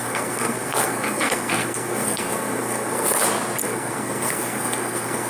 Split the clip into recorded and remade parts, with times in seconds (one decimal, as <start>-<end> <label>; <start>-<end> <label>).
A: 0.0-3.2 remade; 3.2-3.6 recorded; 3.6-5.3 remade